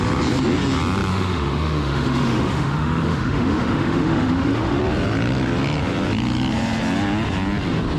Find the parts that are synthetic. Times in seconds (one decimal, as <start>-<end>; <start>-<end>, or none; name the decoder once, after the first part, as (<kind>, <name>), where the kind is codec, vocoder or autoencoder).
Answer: 1.1-4.8 (autoencoder, DAC-VAE)

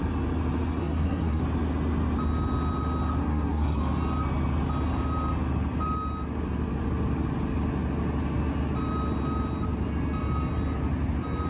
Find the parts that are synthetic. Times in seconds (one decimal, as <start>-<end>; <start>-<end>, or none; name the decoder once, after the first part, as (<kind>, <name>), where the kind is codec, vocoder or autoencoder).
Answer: 0.8-1.4 (codec, SNAC); 3.2-3.8

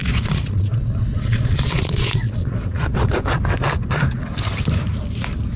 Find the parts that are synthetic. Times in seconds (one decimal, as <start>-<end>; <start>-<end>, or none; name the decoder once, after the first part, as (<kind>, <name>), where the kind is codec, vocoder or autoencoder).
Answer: 0.0-3.4 (vocoder, Vocos)

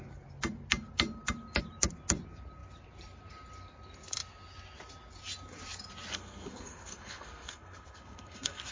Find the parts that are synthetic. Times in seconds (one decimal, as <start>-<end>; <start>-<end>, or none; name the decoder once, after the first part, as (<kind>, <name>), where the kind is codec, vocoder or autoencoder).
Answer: 6.1-8.7 (codec, SNAC)